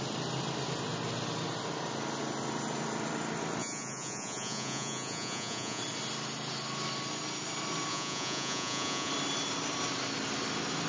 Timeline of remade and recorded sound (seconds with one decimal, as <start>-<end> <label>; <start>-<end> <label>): 0.0-3.6 recorded; 3.6-5.8 remade; 5.8-7.9 recorded; 7.9-9.1 remade; 9.1-10.9 recorded